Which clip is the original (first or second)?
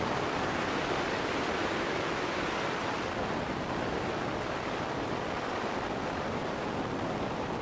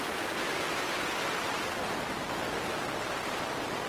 second